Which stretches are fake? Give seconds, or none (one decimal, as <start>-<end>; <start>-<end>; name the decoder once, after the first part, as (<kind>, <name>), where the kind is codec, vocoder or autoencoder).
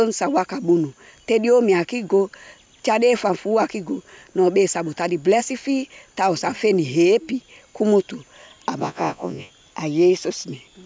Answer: 8.8-9.5 (vocoder, Vocos)